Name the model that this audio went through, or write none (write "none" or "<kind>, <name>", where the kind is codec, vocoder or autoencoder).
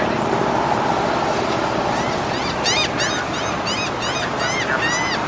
none